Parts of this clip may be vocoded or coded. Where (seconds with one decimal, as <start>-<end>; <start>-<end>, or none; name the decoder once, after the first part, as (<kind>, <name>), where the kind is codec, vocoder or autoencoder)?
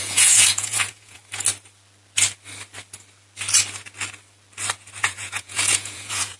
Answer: 0.0-1.2 (vocoder, Vocos); 5.0-6.4